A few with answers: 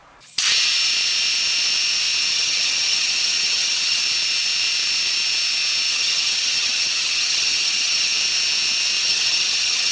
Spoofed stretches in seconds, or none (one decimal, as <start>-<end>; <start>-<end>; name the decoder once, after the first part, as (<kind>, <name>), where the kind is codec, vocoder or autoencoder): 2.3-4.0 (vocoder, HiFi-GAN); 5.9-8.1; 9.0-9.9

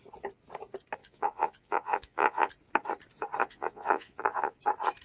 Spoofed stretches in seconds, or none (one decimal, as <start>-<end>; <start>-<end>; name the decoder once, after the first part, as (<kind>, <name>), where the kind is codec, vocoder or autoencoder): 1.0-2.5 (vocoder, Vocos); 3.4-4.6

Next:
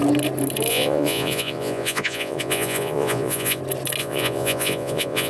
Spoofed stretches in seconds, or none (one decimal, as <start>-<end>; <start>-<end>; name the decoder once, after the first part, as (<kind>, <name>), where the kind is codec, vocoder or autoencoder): 0.7-3.6 (vocoder, Vocos); 4.0-5.3

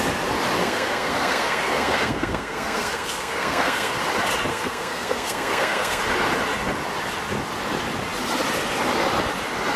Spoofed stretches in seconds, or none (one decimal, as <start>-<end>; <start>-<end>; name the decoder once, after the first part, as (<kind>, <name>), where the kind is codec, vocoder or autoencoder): 0.6-4.0 (codec, SNAC); 4.5-6.0

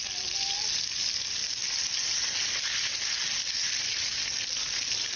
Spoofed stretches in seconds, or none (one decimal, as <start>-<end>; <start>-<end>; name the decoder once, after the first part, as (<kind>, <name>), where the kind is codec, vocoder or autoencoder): none

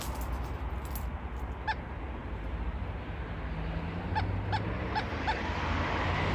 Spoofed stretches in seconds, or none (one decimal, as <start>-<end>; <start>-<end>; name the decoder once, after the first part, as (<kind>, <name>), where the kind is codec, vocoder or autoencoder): none

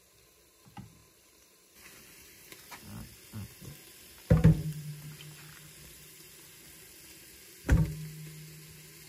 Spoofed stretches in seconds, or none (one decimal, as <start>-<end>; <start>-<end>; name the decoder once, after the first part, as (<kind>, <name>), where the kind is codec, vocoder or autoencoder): 1.0-3.6 (vocoder, BigVGAN v2)